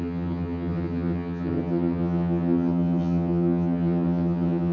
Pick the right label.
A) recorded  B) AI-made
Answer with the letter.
B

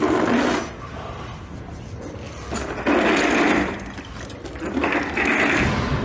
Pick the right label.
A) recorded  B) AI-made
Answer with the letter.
A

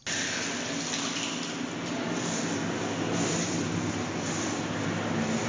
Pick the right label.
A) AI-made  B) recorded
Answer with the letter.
B